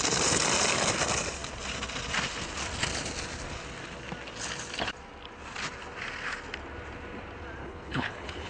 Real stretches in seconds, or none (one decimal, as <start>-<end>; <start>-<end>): 0.0-7.6

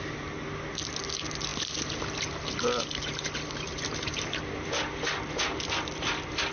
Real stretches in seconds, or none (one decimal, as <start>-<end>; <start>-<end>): 0.0-6.5

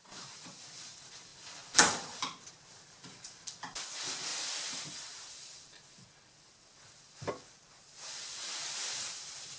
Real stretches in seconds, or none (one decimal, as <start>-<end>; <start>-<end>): none

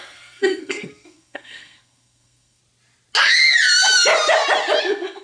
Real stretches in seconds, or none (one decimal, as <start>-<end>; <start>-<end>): 2.6-4.8

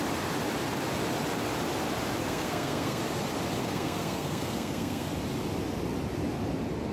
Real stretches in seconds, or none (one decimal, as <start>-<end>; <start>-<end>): 0.0-2.2; 3.0-3.6; 5.1-6.9

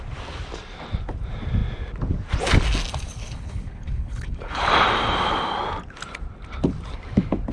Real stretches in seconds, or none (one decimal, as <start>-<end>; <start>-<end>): 0.0-3.2; 4.6-7.5